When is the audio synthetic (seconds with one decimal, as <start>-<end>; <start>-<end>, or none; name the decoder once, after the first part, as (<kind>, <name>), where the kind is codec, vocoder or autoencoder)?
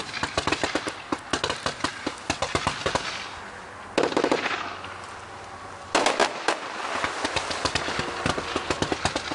none